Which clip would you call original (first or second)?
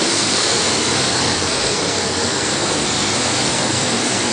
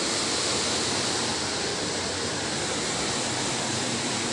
second